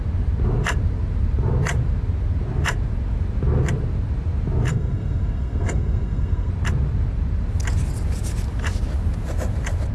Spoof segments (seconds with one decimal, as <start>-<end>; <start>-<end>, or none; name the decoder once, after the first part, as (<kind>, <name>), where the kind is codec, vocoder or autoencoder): 4.7-6.5 (codec, SNAC)